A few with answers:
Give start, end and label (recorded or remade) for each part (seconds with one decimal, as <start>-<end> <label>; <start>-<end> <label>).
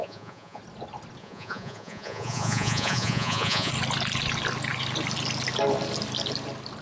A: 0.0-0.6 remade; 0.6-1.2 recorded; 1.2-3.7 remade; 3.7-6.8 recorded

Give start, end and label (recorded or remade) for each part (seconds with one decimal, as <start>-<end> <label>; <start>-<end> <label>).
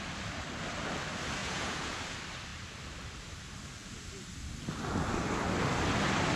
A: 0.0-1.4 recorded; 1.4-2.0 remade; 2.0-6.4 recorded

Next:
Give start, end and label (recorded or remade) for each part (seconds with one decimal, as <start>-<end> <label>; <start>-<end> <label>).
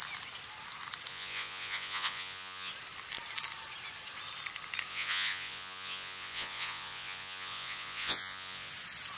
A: 0.0-1.1 recorded; 1.1-2.7 remade; 2.7-4.9 recorded; 4.9-8.7 remade; 8.7-9.2 recorded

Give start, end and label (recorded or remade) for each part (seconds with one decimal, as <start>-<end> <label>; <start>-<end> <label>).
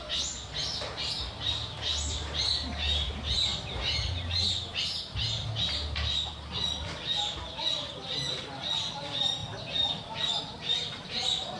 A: 0.0-11.6 recorded